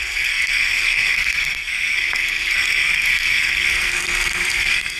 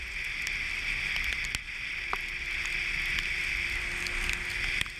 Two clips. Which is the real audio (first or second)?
second